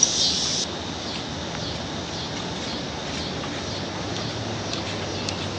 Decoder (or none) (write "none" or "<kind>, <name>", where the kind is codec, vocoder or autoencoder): none